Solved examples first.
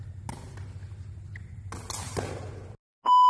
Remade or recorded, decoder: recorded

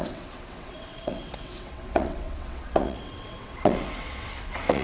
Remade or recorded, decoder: remade, vocoder, WaveNeXt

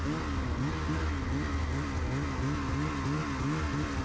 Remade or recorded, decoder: recorded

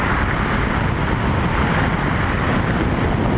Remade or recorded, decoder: recorded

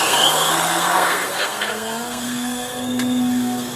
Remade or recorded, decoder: remade, codec, SNAC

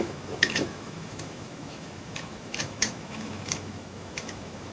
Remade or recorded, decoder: remade, autoencoder, DAC-VAE